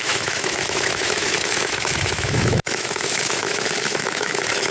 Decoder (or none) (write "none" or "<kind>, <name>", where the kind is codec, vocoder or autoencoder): autoencoder, DAC-VAE